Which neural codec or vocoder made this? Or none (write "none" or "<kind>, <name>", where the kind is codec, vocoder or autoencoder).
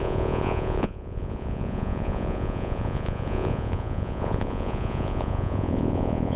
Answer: vocoder, Vocos